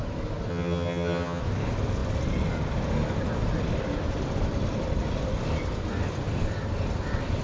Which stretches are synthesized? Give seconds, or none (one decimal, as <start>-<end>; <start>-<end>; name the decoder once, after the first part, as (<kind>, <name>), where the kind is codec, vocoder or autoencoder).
0.5-1.4 (vocoder, HiFi-GAN)